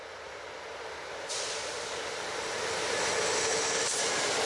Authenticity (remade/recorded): recorded